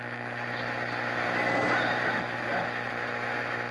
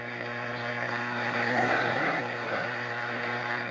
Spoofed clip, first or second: second